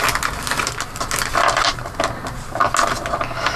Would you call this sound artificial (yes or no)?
no